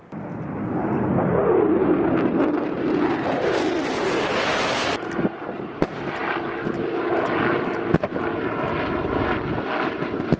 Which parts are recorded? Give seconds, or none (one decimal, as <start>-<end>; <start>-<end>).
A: 0.0-10.4